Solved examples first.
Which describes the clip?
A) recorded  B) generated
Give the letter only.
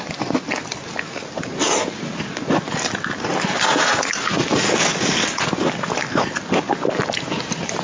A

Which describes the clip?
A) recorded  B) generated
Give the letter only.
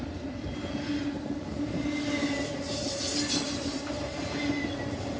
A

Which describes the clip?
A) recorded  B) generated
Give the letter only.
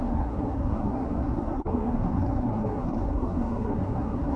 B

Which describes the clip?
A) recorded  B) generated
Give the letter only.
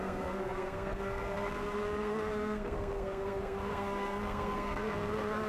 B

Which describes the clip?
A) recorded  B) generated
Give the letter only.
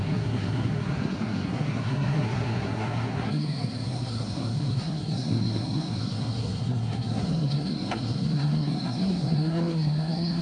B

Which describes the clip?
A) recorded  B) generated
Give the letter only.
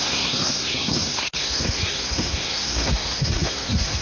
B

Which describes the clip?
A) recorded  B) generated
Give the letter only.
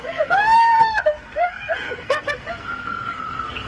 B